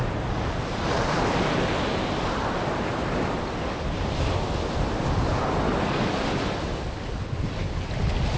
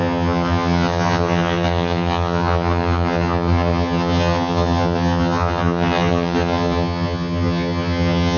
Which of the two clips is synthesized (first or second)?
second